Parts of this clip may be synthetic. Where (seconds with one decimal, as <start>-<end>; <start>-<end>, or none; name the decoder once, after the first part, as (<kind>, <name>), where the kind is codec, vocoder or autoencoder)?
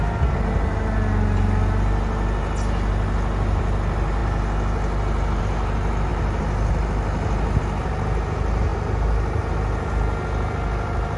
none